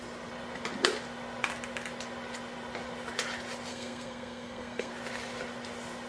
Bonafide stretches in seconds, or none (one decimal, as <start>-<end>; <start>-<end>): 0.0-3.7; 4.9-6.1